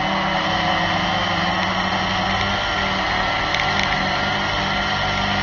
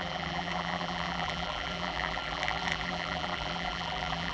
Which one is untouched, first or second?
first